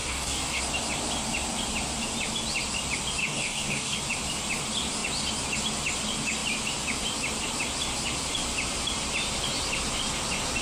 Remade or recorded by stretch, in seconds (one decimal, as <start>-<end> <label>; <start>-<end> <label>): 0.0-0.6 remade; 0.6-3.2 recorded; 3.2-4.0 remade; 4.0-10.6 recorded